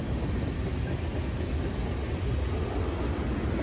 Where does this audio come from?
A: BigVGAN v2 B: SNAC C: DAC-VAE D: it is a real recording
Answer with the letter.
D